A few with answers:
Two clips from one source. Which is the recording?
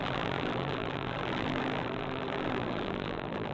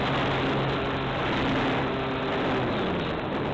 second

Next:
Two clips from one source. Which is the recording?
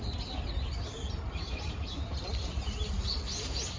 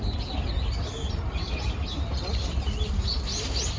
second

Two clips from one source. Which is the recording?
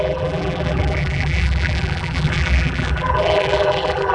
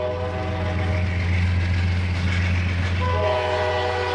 second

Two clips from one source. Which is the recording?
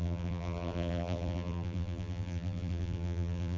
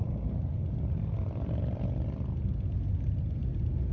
second